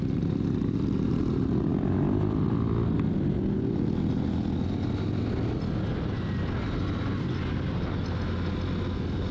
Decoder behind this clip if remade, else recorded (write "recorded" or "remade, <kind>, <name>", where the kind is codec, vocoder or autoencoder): recorded